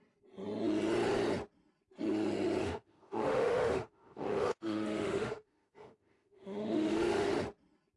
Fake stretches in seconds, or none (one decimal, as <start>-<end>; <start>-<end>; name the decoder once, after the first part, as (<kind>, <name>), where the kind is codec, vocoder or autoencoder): 2.6-7.4 (autoencoder, DAC-VAE)